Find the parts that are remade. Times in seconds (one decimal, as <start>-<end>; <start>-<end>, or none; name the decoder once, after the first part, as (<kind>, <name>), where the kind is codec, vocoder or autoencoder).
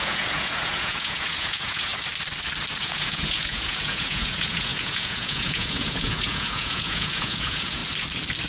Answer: 0.0-1.9 (vocoder, Vocos); 2.8-7.8